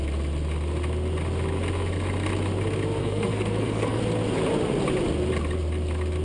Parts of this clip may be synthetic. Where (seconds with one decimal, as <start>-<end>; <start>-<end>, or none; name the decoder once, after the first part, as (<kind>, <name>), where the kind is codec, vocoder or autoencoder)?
3.0-4.0 (codec, SNAC)